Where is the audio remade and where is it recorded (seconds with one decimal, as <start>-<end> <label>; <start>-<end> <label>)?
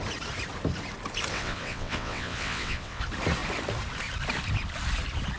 0.0-1.3 recorded; 1.3-3.0 remade; 3.0-5.4 recorded